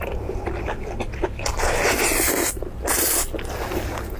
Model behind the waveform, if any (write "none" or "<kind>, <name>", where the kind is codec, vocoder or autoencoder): none